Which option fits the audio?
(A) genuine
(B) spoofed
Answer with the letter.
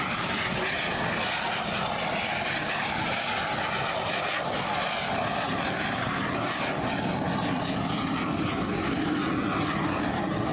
A